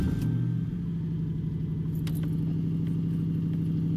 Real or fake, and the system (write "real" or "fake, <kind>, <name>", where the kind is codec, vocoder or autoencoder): real